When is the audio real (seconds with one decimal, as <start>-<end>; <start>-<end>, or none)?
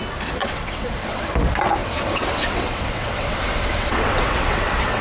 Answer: 0.0-0.4; 1.3-1.8